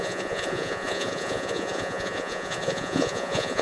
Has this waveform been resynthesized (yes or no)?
yes